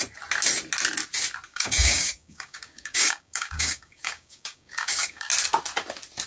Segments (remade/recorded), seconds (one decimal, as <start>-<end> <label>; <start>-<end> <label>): 0.0-1.5 recorded; 1.5-5.3 remade; 5.3-6.3 recorded